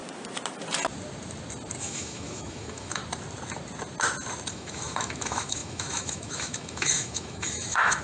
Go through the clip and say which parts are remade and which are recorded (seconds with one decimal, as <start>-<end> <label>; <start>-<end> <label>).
0.0-1.8 recorded; 1.8-3.0 remade; 3.0-4.5 recorded; 4.5-8.0 remade